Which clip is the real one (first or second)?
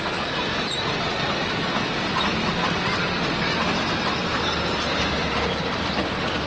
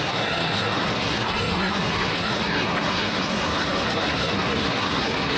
first